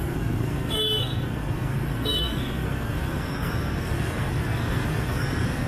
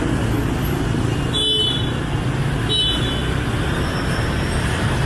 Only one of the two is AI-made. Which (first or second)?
first